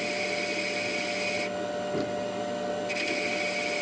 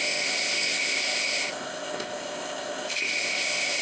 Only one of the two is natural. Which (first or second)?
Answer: first